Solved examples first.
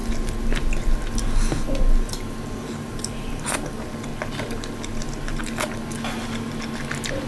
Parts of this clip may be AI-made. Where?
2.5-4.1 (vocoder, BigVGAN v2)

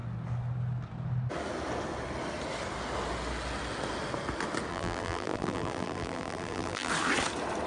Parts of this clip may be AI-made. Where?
4.7-6.9 (vocoder, BigVGAN v2)

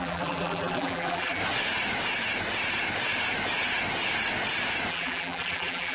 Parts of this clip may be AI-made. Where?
0.0-1.4 (vocoder, BigVGAN v2); 4.9-5.9

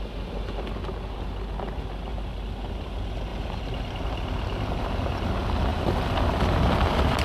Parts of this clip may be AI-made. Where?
3.3-4.7 (vocoder, BigVGAN v2); 5.7-7.2